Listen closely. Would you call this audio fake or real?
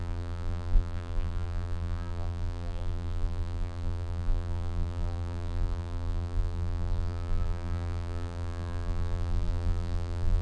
fake